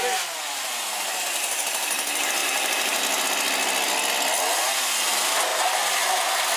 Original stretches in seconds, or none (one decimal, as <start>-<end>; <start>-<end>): 0.0-2.4; 3.0-5.5; 6.1-6.6